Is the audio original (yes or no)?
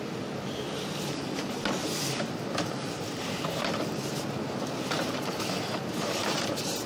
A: yes